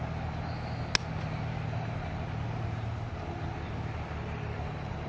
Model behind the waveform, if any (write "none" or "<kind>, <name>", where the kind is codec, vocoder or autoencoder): none